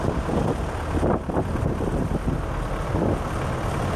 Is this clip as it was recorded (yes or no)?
no